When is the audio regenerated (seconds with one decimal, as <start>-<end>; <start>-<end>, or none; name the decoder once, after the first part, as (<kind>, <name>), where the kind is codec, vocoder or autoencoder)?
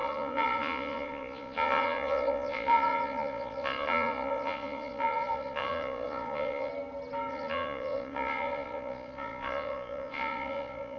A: 0.0-6.7 (vocoder, Vocos); 7.3-11.0